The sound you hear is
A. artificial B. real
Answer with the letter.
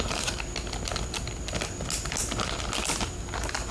B